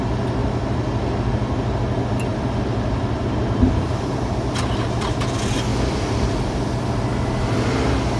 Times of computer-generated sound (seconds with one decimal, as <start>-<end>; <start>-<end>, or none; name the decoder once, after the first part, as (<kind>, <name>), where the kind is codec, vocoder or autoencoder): 2.3-5.2 (vocoder, BigVGAN v2); 5.7-7.0